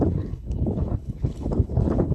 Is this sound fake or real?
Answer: fake